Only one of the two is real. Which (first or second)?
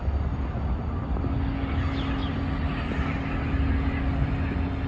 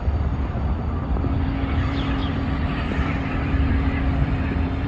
first